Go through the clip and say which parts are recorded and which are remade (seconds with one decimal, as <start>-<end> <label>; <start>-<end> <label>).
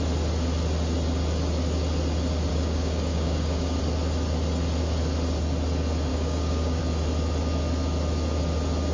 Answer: 0.0-2.5 recorded; 2.5-3.8 remade; 3.8-6.1 recorded; 6.1-6.8 remade; 6.8-8.9 recorded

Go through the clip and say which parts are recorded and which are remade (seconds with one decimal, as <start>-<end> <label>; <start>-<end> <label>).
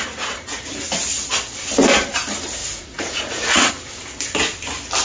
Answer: 0.0-2.6 recorded; 2.6-3.7 remade; 3.7-5.0 recorded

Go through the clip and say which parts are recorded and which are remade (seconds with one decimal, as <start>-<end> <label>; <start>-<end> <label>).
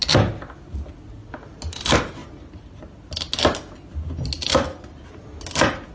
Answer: 0.0-5.9 recorded